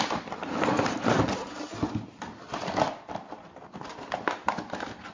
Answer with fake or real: real